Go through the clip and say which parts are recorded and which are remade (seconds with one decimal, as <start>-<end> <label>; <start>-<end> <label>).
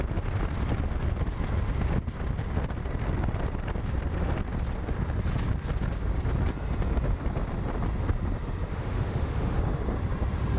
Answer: 0.0-8.7 recorded; 8.7-9.6 remade; 9.6-10.6 recorded